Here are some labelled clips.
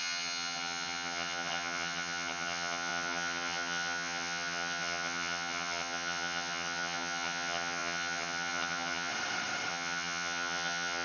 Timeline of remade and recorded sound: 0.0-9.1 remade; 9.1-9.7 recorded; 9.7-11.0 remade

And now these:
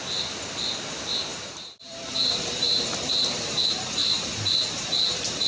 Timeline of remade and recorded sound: 0.0-1.3 recorded; 1.3-3.6 remade; 3.6-5.5 recorded